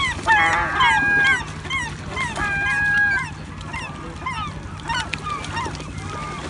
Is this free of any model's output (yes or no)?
yes